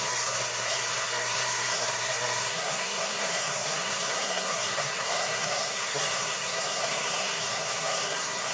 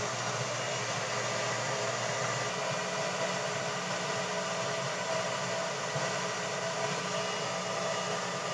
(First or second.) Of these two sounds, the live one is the second